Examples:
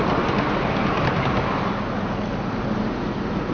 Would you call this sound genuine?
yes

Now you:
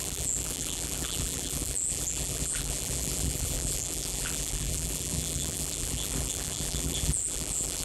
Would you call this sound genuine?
no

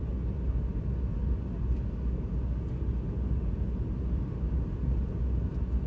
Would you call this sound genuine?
yes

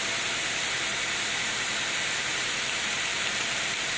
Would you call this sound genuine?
no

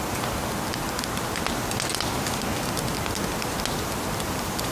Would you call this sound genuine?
yes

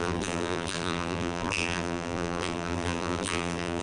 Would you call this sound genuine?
no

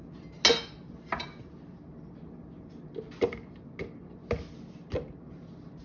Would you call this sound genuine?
yes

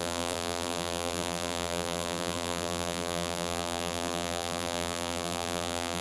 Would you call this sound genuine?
no